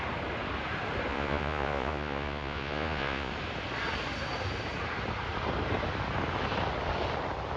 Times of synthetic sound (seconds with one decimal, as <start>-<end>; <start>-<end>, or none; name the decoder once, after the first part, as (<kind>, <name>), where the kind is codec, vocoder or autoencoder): 1.1-3.3 (vocoder, Vocos)